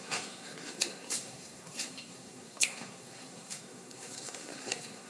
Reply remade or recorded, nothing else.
remade